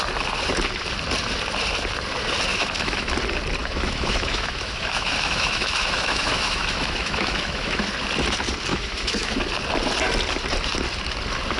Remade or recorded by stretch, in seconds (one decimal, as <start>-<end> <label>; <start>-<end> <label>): 0.0-2.5 recorded; 2.5-3.1 remade; 3.1-3.6 recorded; 3.6-7.9 remade; 7.9-8.7 recorded; 8.7-9.3 remade; 9.3-11.6 recorded